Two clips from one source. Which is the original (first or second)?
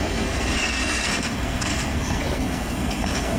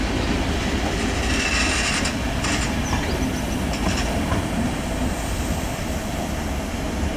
second